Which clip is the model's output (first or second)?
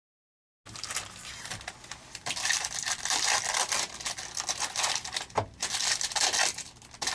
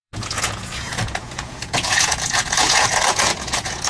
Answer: second